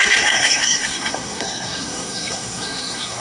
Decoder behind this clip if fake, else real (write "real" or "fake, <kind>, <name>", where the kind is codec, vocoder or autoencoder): fake, codec, SNAC